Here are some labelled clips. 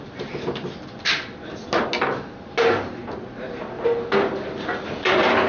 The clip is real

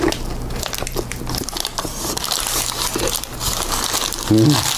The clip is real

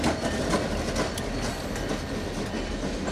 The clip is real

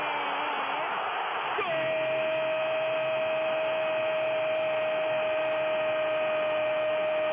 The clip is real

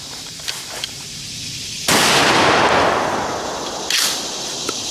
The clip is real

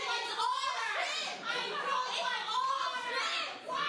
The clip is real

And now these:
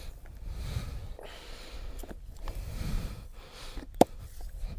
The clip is real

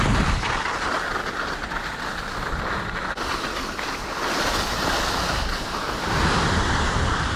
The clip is real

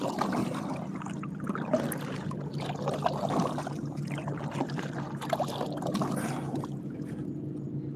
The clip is real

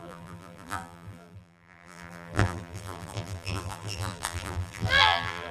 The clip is fake